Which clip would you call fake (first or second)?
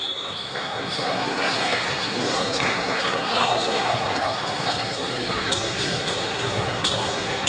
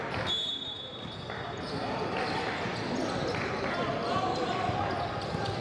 first